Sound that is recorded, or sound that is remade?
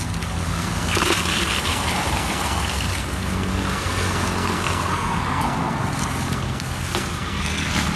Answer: remade